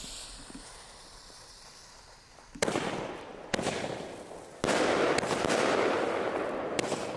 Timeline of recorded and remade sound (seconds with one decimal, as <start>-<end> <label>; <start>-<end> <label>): 0.0-7.2 recorded